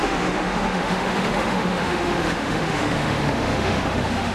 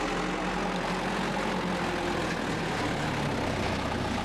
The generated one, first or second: first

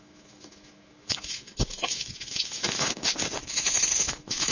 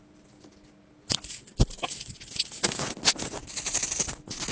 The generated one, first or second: first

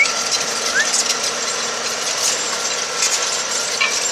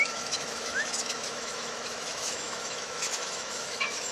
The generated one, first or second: second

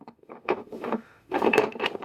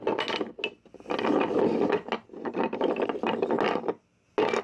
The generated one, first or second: first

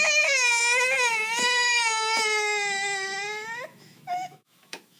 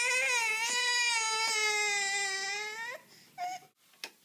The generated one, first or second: first